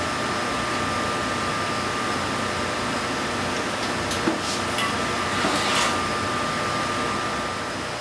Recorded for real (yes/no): yes